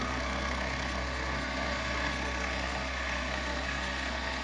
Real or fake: fake